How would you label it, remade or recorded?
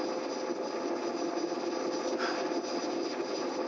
recorded